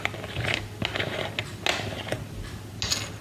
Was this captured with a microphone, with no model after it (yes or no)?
yes